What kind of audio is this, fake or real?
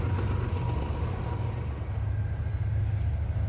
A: real